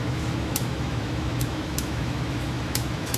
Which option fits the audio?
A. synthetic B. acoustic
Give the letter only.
A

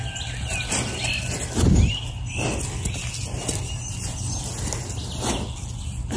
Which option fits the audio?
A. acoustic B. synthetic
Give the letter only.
A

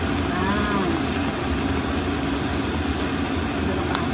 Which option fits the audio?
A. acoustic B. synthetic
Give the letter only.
A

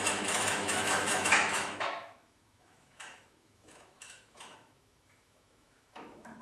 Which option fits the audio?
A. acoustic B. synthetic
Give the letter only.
B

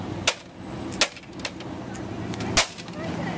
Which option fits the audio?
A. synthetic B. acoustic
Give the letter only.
B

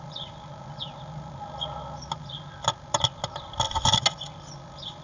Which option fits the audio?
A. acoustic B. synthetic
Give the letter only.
A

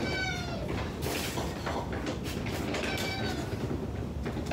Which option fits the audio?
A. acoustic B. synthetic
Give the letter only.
A